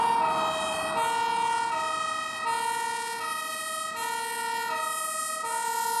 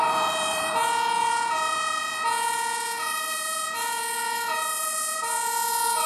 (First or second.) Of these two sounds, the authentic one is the first